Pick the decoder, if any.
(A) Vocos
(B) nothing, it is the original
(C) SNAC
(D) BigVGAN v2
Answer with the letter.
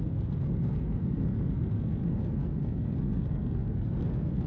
C